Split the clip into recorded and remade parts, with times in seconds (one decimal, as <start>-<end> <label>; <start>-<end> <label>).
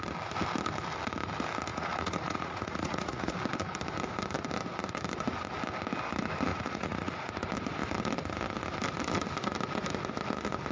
0.0-1.7 recorded; 1.7-3.3 remade; 3.3-6.5 recorded; 6.5-7.2 remade; 7.2-10.7 recorded